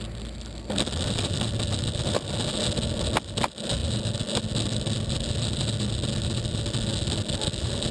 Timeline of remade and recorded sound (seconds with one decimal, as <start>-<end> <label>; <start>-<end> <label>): 0.0-7.9 recorded